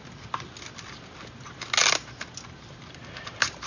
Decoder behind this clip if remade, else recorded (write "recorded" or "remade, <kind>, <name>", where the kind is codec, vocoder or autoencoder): recorded